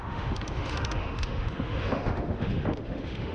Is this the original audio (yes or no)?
no